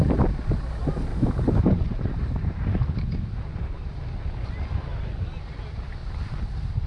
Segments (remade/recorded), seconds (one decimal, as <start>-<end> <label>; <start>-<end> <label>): 0.0-1.1 recorded; 1.1-1.9 remade; 1.9-6.9 recorded